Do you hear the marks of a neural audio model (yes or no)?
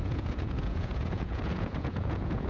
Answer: yes